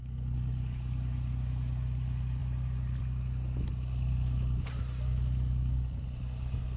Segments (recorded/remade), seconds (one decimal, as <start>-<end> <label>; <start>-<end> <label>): 0.0-2.4 recorded; 2.4-3.0 remade; 3.0-6.8 recorded

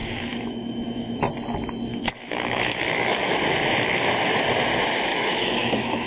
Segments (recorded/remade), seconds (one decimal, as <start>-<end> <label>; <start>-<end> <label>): 0.0-1.2 remade; 1.2-1.9 recorded; 1.9-3.4 remade; 3.4-5.1 recorded; 5.1-6.1 remade

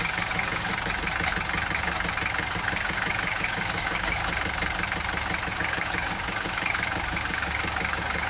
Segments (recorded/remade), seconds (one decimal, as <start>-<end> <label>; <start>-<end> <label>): 0.0-0.7 remade; 0.7-2.5 recorded; 2.5-4.2 remade; 4.2-5.5 recorded; 5.5-8.3 remade

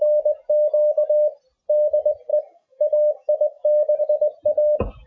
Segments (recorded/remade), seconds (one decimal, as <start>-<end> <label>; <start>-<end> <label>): 0.0-2.3 recorded; 2.3-4.0 remade; 4.0-5.1 recorded